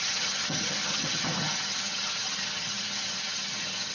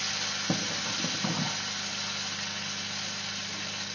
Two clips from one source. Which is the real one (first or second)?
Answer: second